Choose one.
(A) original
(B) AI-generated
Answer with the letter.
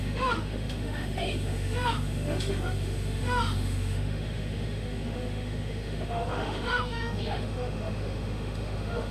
B